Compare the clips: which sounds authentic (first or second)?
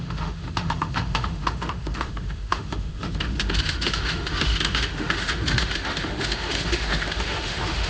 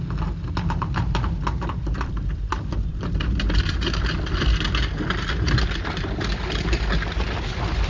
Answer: second